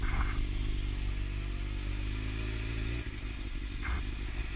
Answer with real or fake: real